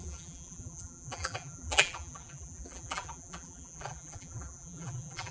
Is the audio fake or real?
fake